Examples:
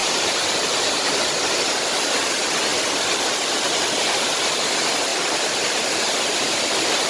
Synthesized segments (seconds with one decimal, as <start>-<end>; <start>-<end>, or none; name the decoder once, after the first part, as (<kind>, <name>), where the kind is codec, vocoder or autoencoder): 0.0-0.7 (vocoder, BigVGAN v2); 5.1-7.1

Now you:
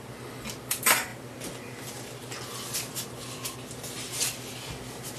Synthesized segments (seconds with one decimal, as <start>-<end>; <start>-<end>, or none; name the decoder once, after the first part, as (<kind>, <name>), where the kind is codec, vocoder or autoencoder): none

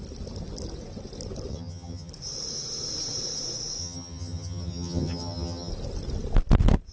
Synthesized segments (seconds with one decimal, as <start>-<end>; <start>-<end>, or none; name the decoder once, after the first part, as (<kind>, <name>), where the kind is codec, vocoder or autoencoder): 1.5-2.1 (vocoder, HiFi-GAN); 3.8-5.7